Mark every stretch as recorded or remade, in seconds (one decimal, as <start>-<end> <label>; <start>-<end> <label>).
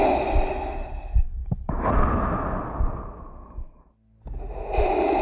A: 0.0-5.2 recorded